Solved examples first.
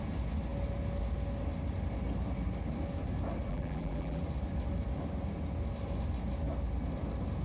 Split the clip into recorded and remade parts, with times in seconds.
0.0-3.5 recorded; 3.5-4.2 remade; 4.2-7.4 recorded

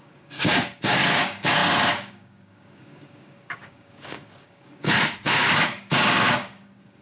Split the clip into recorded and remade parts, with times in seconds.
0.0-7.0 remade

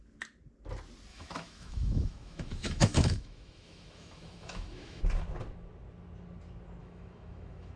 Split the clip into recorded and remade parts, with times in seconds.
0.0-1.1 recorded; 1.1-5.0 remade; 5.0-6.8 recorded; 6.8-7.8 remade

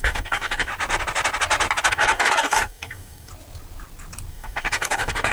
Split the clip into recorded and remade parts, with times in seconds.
0.0-0.7 remade; 0.7-1.9 recorded; 1.9-3.3 remade; 3.3-4.3 recorded; 4.3-5.3 remade